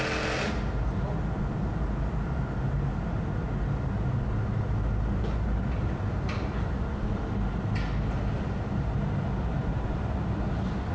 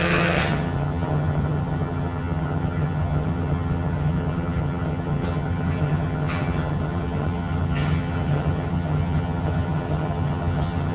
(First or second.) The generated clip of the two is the second